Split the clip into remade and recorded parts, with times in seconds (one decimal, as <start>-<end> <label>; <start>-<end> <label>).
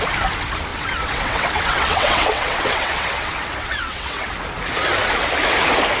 0.0-0.7 recorded; 0.7-4.3 remade; 4.3-6.0 recorded